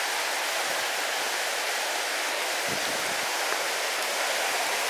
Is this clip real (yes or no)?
yes